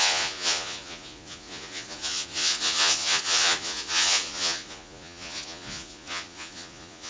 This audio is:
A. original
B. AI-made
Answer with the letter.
B